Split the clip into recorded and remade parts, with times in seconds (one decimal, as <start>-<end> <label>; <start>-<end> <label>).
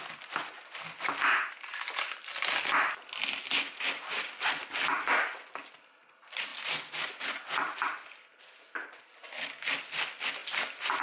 0.0-11.0 recorded